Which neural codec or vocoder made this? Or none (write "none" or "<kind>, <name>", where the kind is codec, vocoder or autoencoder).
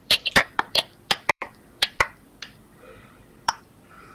vocoder, BigVGAN v2